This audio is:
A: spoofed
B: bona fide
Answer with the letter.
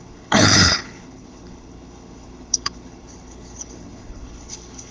A